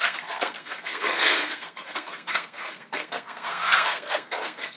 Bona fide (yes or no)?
no